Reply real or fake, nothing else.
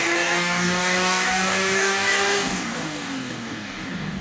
fake